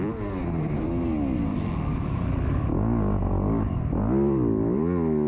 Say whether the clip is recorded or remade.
recorded